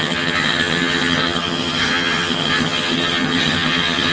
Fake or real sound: fake